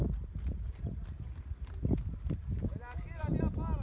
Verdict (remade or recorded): recorded